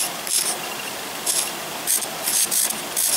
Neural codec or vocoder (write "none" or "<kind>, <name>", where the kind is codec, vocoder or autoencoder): none